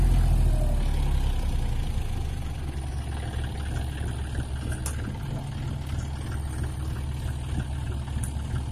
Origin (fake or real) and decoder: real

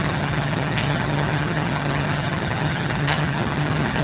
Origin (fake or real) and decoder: fake, vocoder, HiFi-GAN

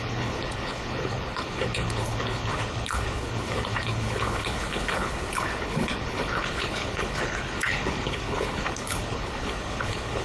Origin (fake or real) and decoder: fake, codec, HILCodec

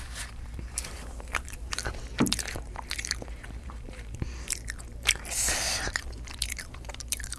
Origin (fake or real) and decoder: fake, vocoder, BigVGAN v2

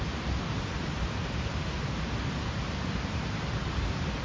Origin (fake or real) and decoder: fake, vocoder, BigVGAN v2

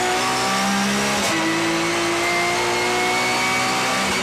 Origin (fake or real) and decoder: real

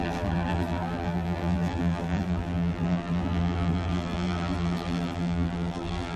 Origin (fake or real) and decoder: fake, vocoder, BigVGAN v2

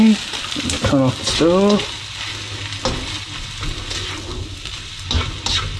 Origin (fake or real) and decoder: real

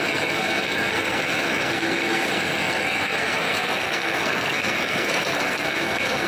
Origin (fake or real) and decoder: fake, codec, SNAC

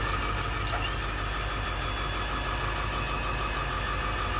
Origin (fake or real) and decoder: real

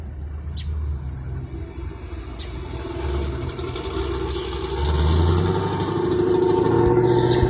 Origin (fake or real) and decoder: real